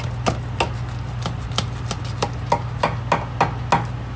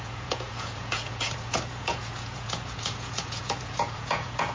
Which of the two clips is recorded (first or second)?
first